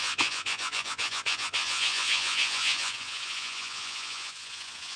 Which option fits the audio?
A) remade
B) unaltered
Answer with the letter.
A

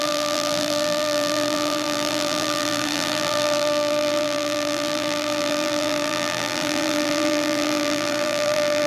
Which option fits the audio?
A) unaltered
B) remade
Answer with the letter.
B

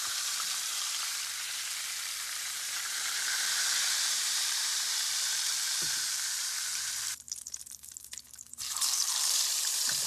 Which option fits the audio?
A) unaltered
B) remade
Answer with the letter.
B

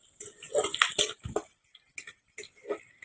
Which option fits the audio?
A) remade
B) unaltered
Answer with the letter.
B